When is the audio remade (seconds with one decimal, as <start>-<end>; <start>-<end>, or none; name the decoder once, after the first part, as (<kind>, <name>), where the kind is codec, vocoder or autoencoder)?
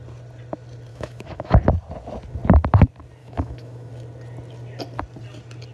0.9-1.6 (autoencoder, DAC-VAE); 3.2-3.9